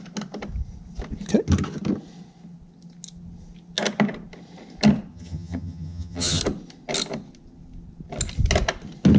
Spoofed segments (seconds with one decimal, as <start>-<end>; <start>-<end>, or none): 5.1-6.4